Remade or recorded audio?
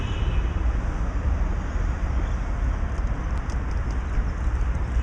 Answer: recorded